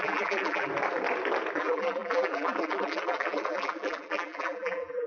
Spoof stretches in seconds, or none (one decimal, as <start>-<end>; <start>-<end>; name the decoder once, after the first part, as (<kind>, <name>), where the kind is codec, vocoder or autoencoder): 0.0-0.7 (vocoder, BigVGAN v2); 1.6-5.1